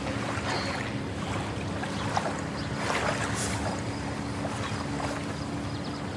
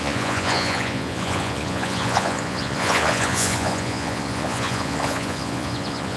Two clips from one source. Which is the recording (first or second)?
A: first